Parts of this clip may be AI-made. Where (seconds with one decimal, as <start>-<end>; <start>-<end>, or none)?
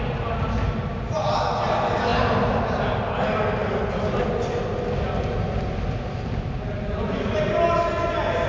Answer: none